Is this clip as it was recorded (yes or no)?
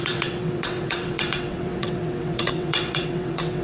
no